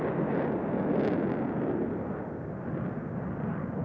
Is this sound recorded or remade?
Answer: recorded